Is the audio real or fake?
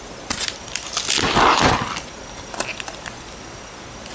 real